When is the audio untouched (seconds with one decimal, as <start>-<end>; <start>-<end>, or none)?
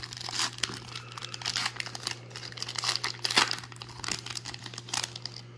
0.0-5.6